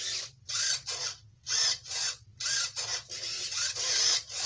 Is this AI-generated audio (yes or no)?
no